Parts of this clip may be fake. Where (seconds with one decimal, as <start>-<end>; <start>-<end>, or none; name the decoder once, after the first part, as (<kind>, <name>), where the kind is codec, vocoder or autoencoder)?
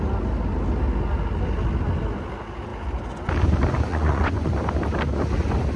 3.9-4.5 (vocoder, Vocos)